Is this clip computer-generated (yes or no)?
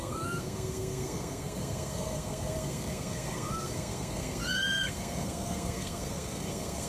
yes